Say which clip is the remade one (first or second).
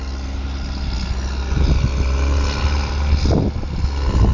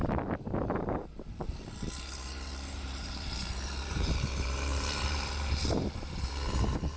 second